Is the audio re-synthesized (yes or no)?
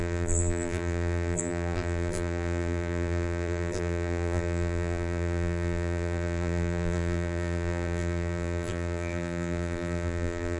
yes